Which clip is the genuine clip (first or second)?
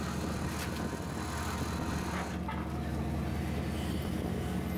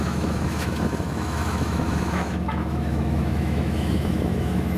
first